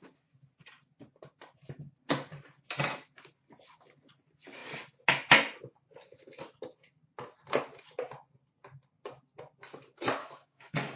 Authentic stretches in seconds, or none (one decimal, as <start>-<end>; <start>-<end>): 0.0-10.2